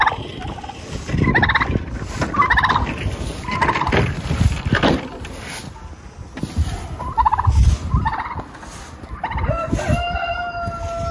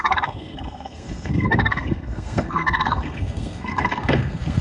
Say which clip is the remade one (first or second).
second